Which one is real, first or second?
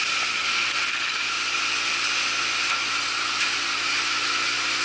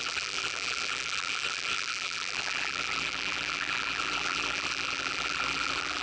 first